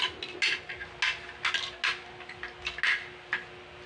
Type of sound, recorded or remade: recorded